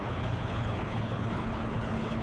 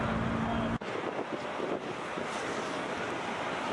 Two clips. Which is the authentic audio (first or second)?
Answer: second